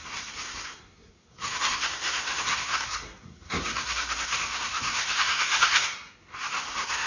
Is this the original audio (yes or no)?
no